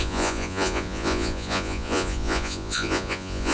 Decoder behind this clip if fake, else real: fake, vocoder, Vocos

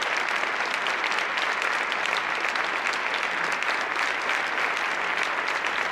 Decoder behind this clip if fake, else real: real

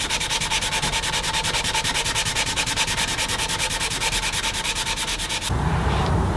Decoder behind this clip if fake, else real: real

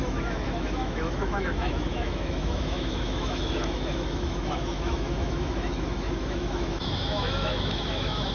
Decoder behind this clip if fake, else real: fake, autoencoder, DAC-VAE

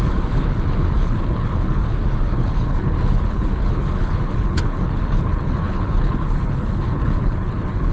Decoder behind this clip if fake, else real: fake, codec, HILCodec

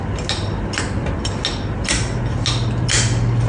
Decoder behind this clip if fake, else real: real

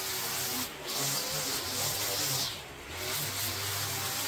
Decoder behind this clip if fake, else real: real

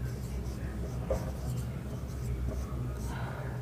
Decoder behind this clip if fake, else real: real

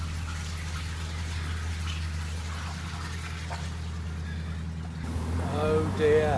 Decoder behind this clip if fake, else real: real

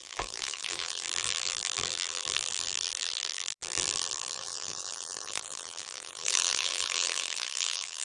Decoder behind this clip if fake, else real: fake, vocoder, BigVGAN v2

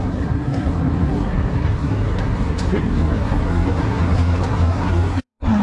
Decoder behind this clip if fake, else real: fake, codec, SNAC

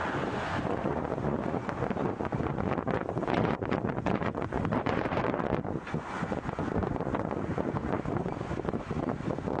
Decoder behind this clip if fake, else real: fake, vocoder, Vocos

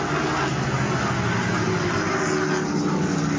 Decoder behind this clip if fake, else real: real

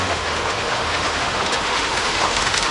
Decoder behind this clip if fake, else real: fake, autoencoder, DAC-VAE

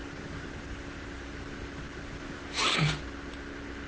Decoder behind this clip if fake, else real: real